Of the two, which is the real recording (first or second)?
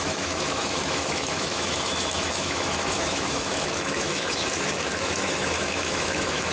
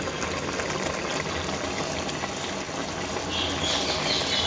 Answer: second